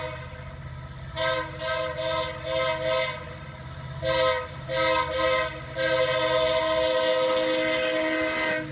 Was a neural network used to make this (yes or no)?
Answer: no